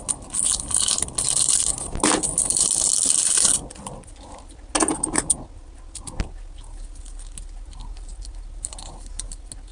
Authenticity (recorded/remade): recorded